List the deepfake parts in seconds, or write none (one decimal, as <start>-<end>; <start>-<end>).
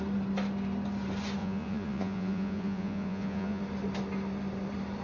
1.4-3.6